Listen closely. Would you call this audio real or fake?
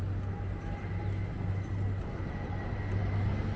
real